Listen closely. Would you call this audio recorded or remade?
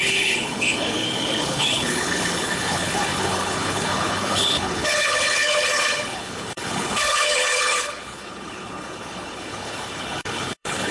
remade